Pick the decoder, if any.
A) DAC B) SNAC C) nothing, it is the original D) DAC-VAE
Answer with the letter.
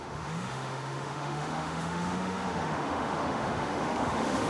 D